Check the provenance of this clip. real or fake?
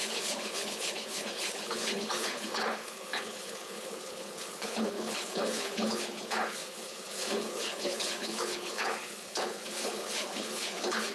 fake